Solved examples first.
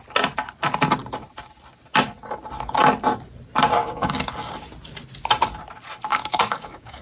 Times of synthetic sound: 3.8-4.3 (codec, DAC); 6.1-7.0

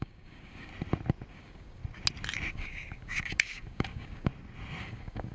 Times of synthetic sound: 0.0-0.7 (codec, DAC); 1.3-1.8; 2.5-4.3; 4.8-5.3

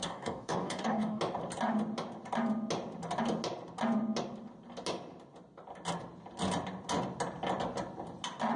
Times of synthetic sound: 0.0-1.2 (codec, DAC)